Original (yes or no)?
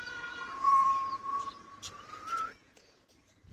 no